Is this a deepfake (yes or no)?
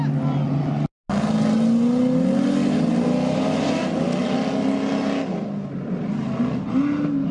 no